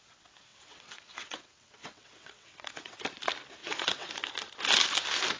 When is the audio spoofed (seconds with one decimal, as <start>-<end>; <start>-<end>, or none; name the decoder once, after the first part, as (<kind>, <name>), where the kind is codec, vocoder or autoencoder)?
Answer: 0.5-3.0 (vocoder, WaveNeXt); 3.6-4.1